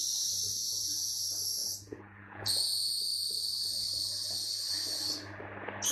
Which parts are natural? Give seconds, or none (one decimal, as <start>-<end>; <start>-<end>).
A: 0.0-0.6; 1.2-1.6; 2.8-5.9